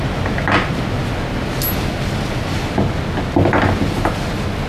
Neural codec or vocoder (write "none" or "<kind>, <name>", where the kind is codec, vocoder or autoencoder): none